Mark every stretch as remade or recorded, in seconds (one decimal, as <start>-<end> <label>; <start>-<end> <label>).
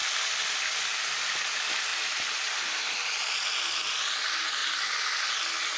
0.0-5.8 recorded